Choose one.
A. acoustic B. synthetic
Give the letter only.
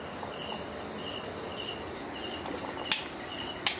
A